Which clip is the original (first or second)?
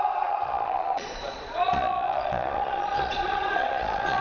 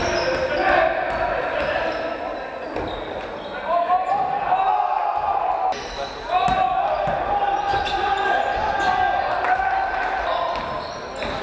second